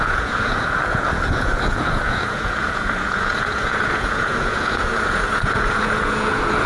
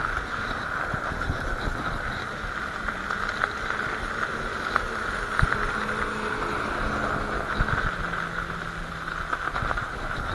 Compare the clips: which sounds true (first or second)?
second